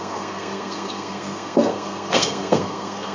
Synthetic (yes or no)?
yes